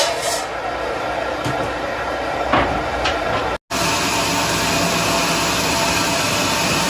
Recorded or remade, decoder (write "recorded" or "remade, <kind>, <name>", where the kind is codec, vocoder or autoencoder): recorded